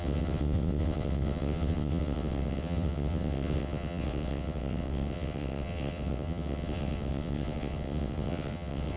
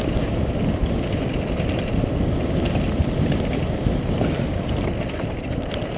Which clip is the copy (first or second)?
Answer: first